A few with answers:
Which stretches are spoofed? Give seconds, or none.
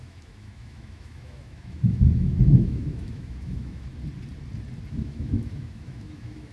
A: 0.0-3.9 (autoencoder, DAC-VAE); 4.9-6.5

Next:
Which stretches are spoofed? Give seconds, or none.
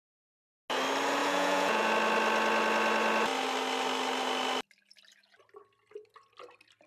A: 1.2-1.9 (vocoder, Vocos)